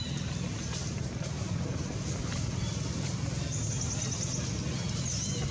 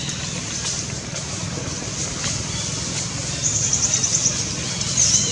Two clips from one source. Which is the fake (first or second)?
second